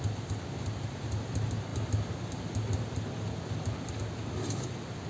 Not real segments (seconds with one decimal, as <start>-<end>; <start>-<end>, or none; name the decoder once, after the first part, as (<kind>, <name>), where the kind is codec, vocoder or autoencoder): none